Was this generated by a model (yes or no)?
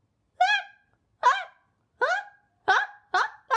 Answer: no